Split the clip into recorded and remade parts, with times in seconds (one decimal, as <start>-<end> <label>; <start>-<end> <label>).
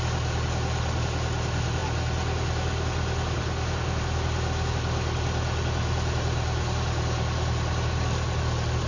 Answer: 0.0-8.9 recorded